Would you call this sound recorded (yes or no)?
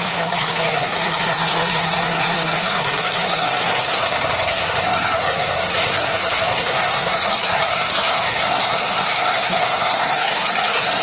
no